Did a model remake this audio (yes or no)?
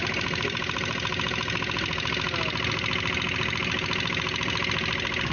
no